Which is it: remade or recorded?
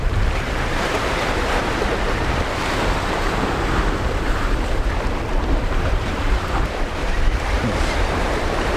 remade